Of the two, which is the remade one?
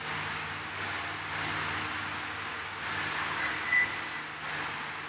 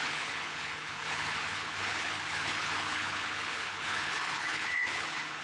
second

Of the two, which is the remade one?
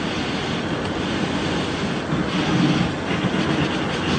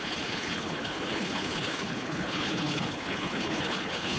second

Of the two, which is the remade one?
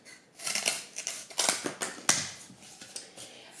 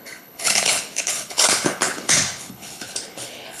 second